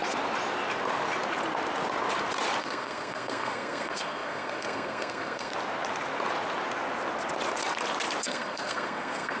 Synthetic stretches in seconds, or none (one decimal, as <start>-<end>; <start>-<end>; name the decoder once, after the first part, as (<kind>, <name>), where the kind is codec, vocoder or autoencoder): 2.6-5.5 (codec, SNAC); 8.2-9.4

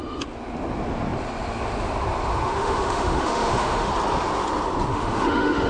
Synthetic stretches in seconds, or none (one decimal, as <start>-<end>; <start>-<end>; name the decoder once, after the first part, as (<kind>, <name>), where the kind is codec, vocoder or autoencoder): 2.3-3.9 (autoencoder, DAC-VAE); 4.9-5.7

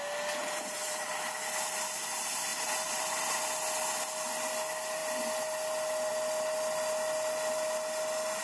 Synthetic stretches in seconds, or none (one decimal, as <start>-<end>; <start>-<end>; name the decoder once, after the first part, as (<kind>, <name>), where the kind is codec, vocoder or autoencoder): 0.4-1.3 (vocoder, BigVGAN v2); 2.5-3.4

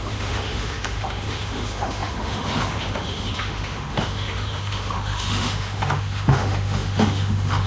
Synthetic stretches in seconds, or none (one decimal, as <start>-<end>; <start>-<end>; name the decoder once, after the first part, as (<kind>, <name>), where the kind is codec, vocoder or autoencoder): 0.0-7.7 (autoencoder, DAC-VAE)

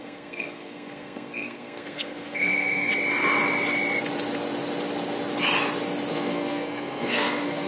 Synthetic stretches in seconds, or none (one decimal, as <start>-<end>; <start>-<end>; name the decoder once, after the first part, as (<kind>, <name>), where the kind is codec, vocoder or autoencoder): 0.0-2.9 (codec, SNAC); 6.1-7.7

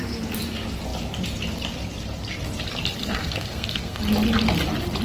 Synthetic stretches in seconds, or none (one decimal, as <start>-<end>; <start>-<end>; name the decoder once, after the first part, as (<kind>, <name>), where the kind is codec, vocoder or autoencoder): 3.0-4.0 (codec, SNAC)

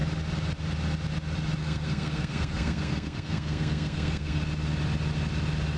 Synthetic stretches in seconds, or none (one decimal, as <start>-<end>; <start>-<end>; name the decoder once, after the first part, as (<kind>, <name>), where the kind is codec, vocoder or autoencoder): 1.6-4.4 (codec, SNAC)